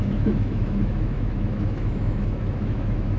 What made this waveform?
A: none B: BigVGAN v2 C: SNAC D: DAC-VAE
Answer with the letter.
D